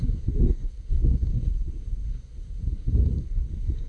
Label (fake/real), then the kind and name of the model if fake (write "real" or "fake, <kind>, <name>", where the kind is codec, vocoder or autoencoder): fake, codec, SNAC